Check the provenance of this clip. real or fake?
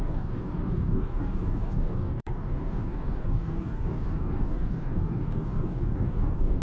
fake